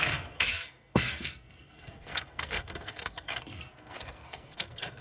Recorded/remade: remade